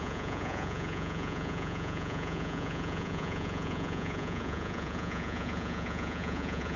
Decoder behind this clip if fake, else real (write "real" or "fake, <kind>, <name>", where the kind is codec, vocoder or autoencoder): fake, vocoder, Vocos